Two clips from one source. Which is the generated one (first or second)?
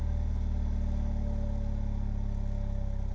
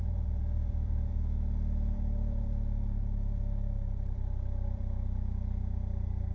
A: second